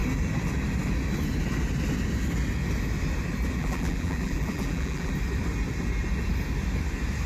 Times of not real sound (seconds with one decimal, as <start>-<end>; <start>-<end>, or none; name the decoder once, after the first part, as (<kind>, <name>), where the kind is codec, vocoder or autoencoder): 3.6-5.1 (vocoder, BigVGAN v2)